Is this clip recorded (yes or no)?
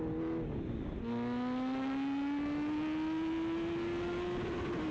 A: yes